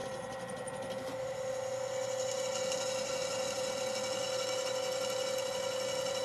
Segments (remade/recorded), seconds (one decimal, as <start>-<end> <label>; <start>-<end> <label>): 0.0-6.2 recorded